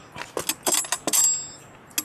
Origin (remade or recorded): recorded